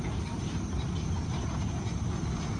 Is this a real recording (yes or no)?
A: yes